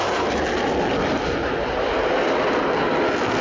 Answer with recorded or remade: recorded